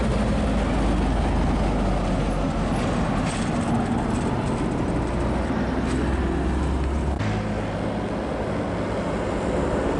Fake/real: real